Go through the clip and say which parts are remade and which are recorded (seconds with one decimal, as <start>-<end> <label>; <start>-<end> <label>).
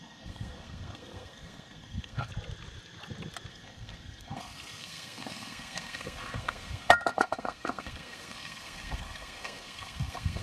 0.0-2.3 remade; 2.3-3.5 recorded; 3.5-10.4 remade